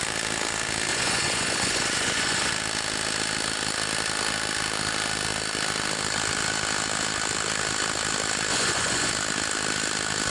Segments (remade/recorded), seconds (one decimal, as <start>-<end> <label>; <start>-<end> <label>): 0.0-0.9 recorded; 0.9-2.5 remade; 2.5-8.5 recorded; 8.5-9.1 remade; 9.1-10.3 recorded